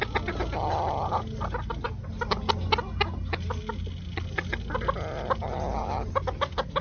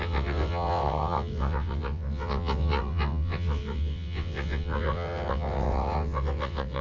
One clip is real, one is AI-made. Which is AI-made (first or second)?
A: second